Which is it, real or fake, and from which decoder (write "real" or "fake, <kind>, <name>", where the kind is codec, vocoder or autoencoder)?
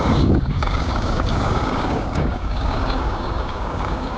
fake, codec, DAC